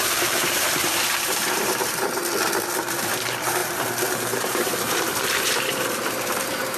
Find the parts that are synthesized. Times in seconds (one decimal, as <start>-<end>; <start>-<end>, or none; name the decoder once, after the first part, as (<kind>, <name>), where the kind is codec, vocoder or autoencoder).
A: 0.0-2.2 (vocoder, BigVGAN v2); 2.8-6.8

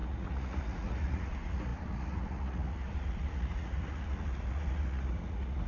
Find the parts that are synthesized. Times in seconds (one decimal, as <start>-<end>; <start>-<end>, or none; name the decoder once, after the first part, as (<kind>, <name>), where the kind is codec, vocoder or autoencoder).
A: 0.0-5.7 (vocoder, Vocos)

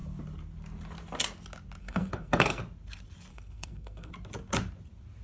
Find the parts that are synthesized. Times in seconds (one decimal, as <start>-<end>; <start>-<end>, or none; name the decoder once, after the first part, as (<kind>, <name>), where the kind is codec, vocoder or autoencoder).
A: 1.8-2.6 (codec, SNAC); 3.3-4.1

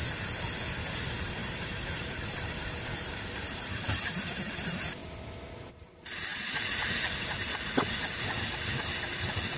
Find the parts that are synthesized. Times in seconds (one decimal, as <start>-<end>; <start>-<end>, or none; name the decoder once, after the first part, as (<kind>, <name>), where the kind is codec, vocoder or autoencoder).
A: 1.4-3.8 (vocoder, BigVGAN v2); 6.3-7.0